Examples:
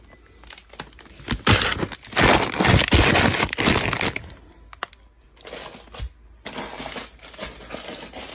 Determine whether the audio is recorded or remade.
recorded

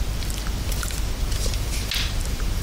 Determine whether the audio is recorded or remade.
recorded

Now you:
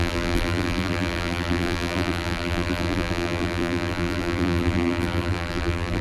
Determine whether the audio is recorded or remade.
remade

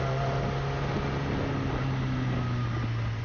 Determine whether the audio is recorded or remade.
recorded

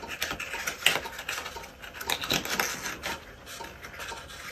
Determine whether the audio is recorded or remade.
recorded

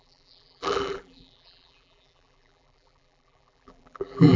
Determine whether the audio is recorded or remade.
remade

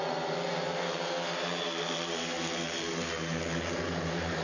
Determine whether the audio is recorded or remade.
remade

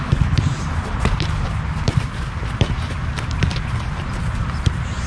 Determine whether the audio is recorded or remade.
remade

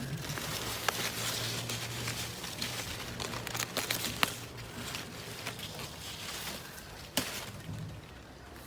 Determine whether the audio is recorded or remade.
recorded